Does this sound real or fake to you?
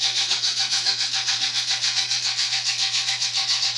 fake